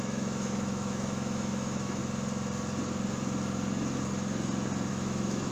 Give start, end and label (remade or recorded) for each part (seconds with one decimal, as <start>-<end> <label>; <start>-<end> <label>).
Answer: 0.0-2.0 remade; 2.0-4.9 recorded; 4.9-5.5 remade